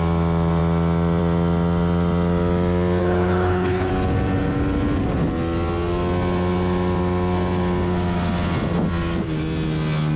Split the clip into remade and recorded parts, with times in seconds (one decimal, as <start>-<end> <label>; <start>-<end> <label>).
0.0-3.0 recorded; 3.0-3.9 remade; 3.9-10.2 recorded